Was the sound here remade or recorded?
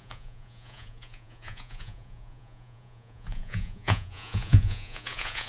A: remade